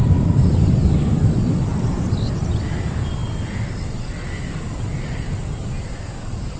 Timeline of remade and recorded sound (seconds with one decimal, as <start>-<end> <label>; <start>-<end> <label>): 0.0-6.6 recorded